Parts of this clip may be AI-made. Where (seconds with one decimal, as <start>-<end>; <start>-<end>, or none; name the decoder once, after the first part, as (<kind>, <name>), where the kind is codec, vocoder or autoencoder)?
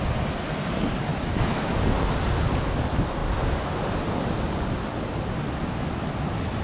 1.1-1.8 (autoencoder, DAC-VAE)